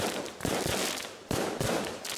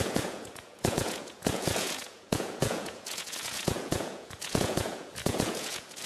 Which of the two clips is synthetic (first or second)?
second